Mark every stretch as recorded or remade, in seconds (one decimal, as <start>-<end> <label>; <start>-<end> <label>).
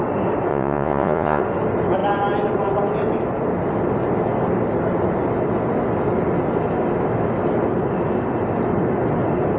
0.0-0.5 recorded; 0.5-1.4 remade; 1.4-9.6 recorded